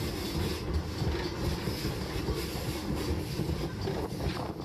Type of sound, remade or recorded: recorded